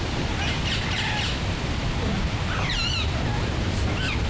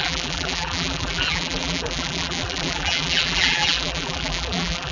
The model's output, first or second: second